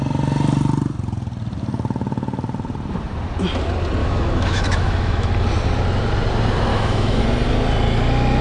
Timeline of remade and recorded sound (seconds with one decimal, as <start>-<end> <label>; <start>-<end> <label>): 0.0-4.0 recorded; 4.0-5.3 remade; 5.3-6.7 recorded; 6.7-7.2 remade; 7.2-8.4 recorded